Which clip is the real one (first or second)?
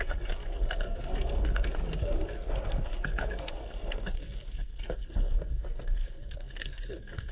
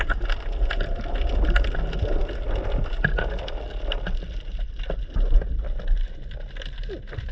second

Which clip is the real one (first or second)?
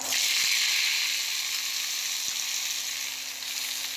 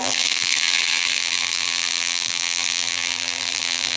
first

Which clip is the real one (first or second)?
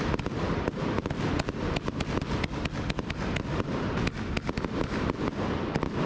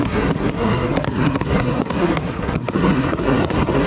first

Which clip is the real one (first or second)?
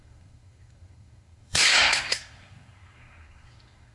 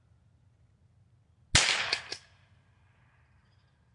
second